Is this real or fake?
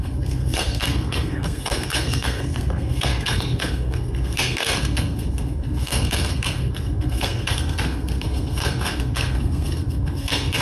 fake